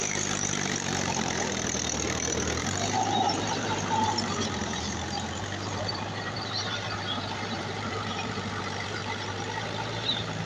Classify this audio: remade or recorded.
remade